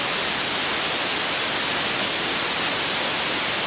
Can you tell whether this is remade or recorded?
recorded